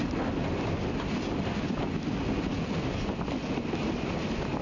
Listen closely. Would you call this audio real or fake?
real